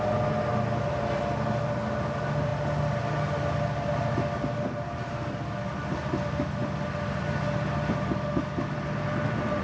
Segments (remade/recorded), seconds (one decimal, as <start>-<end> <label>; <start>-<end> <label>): 0.0-9.6 recorded